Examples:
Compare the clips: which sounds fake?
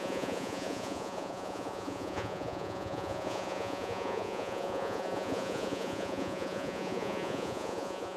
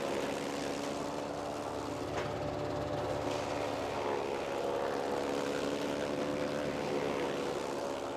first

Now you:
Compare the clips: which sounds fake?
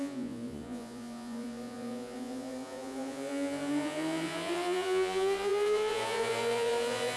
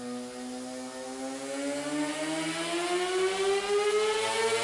first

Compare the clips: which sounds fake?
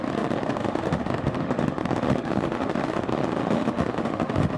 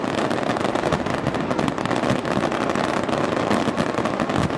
first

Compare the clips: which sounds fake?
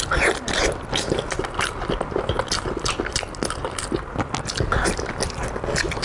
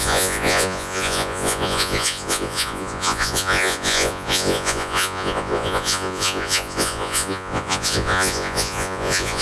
second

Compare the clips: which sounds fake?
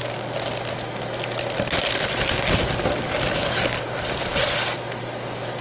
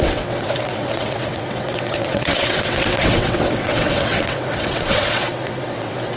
second